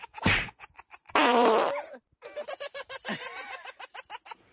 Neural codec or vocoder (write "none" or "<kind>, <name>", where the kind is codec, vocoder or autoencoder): vocoder, BigVGAN v2